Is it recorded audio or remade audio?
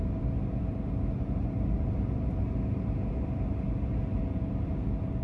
recorded